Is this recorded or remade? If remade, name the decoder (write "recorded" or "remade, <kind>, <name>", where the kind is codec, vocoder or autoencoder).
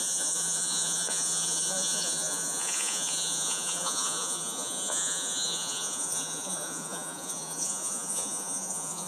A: remade, vocoder, Vocos